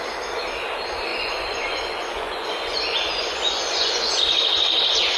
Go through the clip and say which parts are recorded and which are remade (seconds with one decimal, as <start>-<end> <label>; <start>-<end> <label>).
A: 0.0-1.1 recorded; 1.1-4.2 remade; 4.2-5.2 recorded